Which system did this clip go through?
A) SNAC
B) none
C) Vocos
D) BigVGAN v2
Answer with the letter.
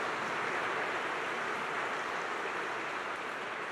D